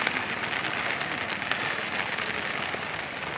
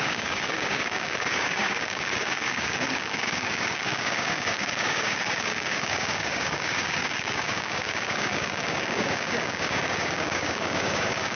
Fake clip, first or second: second